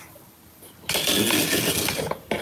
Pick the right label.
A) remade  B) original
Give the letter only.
B